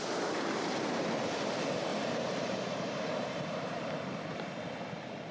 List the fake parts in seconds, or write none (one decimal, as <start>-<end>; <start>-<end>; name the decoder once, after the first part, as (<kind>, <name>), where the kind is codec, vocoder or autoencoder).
1.9-3.9 (vocoder, BigVGAN v2)